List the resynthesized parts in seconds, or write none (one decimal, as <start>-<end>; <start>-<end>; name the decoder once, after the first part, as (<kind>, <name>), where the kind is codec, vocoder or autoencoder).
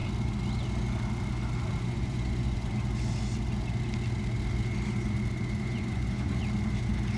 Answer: 1.8-2.7 (vocoder, Vocos); 5.6-6.4